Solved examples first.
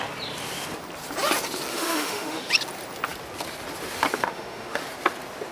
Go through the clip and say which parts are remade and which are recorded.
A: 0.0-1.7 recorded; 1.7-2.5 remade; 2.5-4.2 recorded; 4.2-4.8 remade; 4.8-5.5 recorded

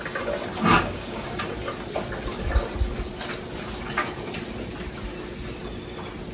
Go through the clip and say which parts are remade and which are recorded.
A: 0.0-0.7 recorded; 0.7-1.4 remade; 1.4-6.3 recorded

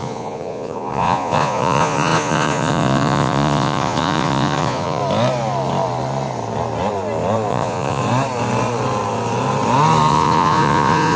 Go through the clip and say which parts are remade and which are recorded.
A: 0.0-5.0 remade; 5.0-7.5 recorded; 7.5-8.0 remade; 8.0-10.1 recorded; 10.1-11.2 remade

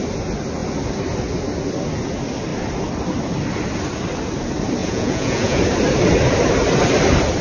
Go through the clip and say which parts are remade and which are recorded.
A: 0.0-4.8 recorded; 4.8-5.6 remade; 5.6-7.4 recorded

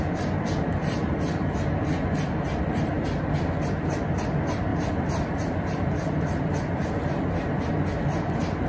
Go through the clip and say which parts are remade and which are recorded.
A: 0.0-4.7 recorded; 4.7-8.1 remade; 8.1-8.7 recorded

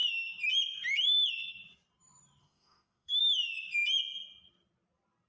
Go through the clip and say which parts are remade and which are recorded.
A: 0.0-2.4 recorded; 2.4-3.2 remade; 3.2-5.3 recorded

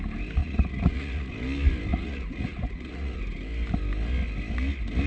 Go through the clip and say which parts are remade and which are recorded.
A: 0.0-0.4 recorded; 0.4-1.3 remade; 1.3-1.9 recorded; 1.9-3.2 remade; 3.2-5.1 recorded